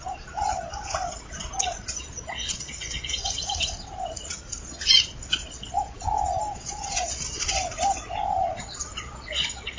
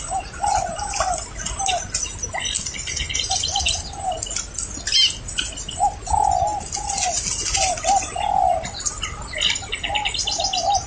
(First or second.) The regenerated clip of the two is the first